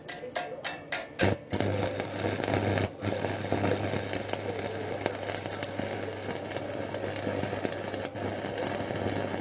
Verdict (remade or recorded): recorded